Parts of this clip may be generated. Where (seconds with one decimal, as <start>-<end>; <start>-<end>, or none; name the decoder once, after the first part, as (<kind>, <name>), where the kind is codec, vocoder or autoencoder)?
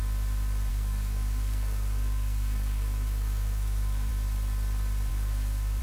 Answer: 0.7-4.1 (codec, SNAC); 5.1-5.8